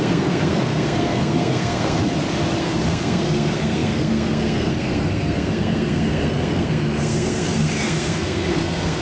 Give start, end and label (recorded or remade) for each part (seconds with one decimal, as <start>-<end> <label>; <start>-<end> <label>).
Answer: 0.0-2.0 remade; 2.0-2.6 recorded; 2.6-9.0 remade